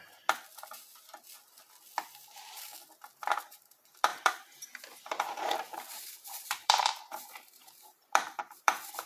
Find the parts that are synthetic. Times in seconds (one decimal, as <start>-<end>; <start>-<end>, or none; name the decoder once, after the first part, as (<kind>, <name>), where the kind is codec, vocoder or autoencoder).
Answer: 0.0-0.4 (vocoder, BigVGAN v2); 3.5-9.1